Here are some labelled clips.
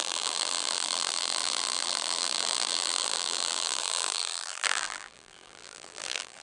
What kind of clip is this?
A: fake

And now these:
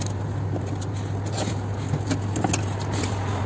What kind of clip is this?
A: real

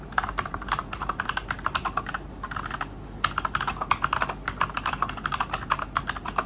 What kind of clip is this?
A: real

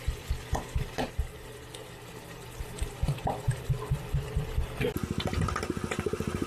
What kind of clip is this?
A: real